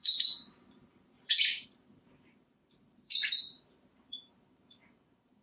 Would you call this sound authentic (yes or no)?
no